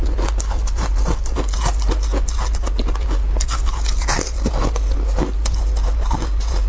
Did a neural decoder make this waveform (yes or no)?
no